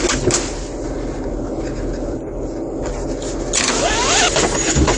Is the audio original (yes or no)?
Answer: yes